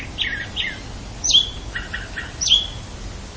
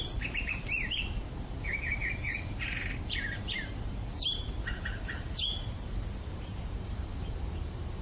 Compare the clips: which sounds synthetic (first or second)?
second